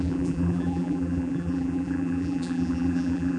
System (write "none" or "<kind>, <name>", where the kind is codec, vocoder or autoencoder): vocoder, BigVGAN v2